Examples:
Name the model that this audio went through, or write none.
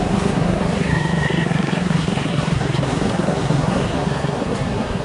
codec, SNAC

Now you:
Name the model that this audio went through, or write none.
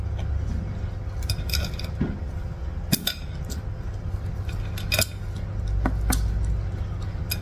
none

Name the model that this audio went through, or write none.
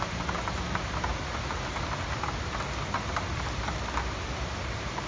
none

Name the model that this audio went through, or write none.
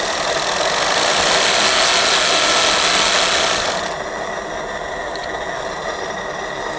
none